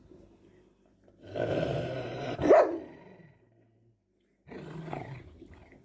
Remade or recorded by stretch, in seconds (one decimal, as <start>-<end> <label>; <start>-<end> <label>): 0.0-1.5 recorded; 1.5-2.5 remade; 2.5-5.8 recorded